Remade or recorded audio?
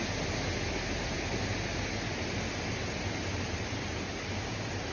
recorded